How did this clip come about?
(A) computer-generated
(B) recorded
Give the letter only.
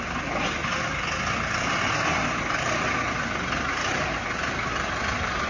B